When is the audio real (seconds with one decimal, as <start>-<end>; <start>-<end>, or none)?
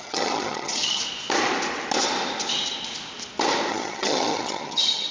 1.0-3.7